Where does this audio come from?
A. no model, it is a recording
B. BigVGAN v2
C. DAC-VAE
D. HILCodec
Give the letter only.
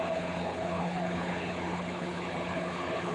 D